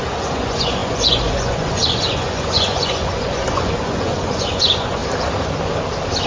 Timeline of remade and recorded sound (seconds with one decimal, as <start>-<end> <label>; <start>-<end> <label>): 0.0-5.0 remade; 5.0-6.3 recorded